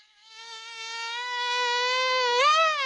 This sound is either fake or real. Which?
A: fake